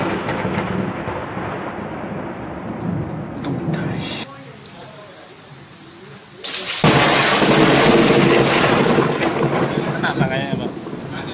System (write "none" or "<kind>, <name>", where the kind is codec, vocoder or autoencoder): none